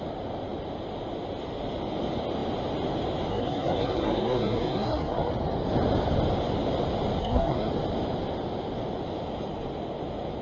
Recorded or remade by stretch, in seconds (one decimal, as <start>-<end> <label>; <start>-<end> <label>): 0.0-3.3 recorded; 3.3-5.3 remade; 5.3-7.2 recorded; 7.2-7.7 remade; 7.7-10.4 recorded